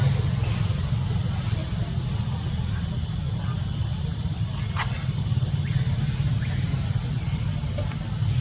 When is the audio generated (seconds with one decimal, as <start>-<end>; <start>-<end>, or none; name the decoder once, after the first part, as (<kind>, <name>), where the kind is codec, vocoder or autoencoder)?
none